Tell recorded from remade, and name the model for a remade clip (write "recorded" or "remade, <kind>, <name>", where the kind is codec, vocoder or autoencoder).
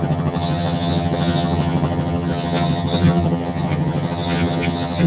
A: remade, vocoder, HiFi-GAN